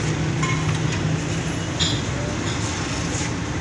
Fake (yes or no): no